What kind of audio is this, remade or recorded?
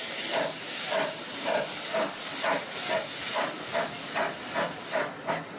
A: recorded